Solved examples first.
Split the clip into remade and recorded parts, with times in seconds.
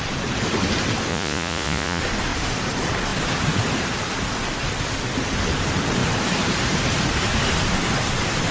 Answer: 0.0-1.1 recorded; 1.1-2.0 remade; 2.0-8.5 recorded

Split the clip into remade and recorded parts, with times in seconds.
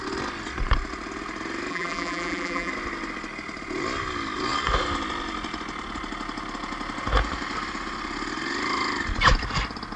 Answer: 0.0-1.7 recorded; 1.7-2.7 remade; 2.7-10.0 recorded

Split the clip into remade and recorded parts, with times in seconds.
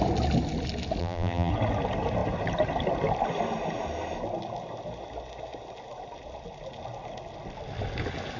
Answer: 0.0-1.0 recorded; 1.0-1.5 remade; 1.5-8.4 recorded